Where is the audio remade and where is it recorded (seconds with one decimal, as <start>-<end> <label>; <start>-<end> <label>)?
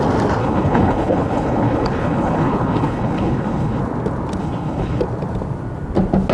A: 0.0-0.4 recorded; 0.4-3.8 remade; 3.8-4.4 recorded; 4.4-5.0 remade; 5.0-6.3 recorded